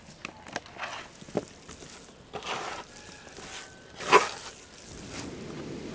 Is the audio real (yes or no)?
yes